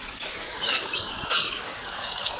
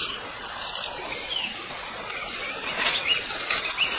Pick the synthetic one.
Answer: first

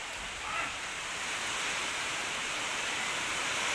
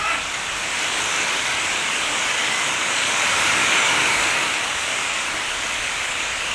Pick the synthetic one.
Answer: second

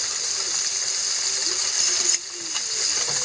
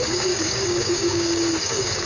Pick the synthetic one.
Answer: second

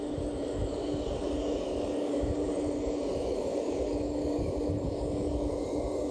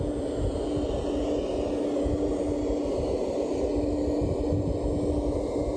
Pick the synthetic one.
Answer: first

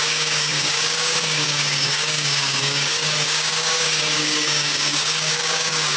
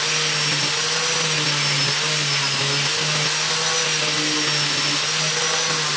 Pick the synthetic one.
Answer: first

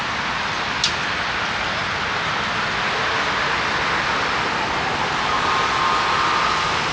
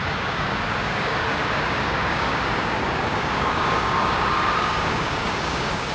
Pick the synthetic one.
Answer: second